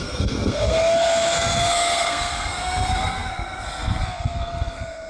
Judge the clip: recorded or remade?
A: remade